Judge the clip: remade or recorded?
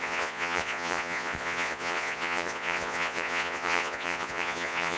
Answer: remade